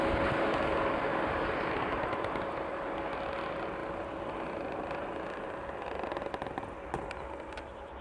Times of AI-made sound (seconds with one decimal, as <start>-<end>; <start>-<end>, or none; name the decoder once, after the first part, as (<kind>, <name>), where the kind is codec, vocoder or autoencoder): 1.1-2.3 (vocoder, BigVGAN v2); 3.8-5.6